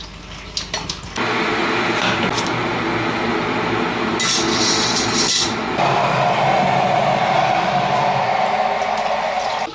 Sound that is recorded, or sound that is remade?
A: recorded